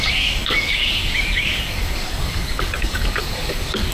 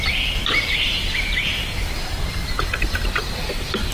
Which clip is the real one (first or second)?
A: second